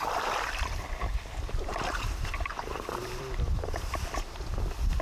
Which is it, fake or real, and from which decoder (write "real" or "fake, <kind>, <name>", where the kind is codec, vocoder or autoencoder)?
fake, vocoder, BigVGAN v2